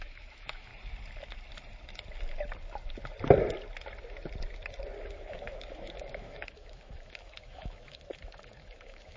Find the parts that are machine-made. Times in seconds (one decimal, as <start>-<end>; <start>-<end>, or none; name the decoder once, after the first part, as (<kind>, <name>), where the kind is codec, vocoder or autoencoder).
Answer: 0.0-0.7 (autoencoder, DAC-VAE); 5.0-9.2